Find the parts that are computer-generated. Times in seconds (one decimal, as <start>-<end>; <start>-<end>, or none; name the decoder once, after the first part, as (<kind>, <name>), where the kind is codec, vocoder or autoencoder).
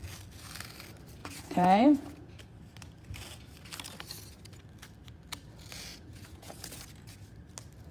1.2-2.3 (vocoder, Vocos); 5.9-6.8